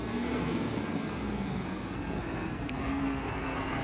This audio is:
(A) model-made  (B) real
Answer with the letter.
A